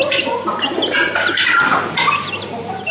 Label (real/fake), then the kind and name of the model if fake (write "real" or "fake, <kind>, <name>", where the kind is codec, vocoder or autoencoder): real